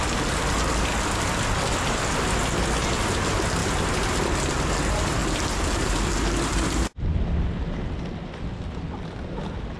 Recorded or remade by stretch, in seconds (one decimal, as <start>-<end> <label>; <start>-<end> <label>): 0.0-9.8 recorded